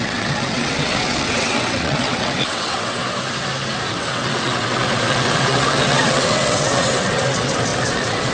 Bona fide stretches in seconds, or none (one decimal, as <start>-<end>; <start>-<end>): 3.0-3.9